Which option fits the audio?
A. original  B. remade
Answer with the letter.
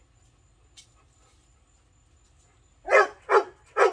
A